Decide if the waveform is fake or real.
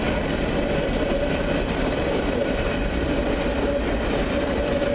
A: fake